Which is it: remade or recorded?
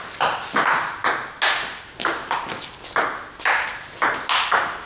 recorded